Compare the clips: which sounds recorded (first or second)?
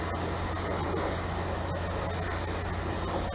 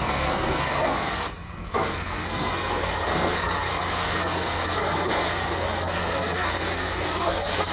first